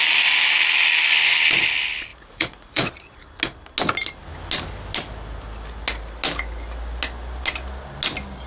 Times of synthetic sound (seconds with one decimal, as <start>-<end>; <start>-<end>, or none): 2.1-2.9